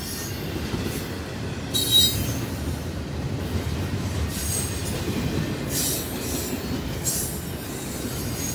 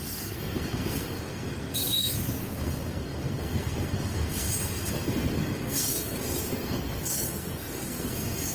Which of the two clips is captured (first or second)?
first